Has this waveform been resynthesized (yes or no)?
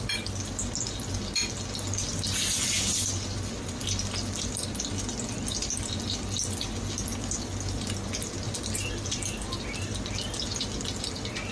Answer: no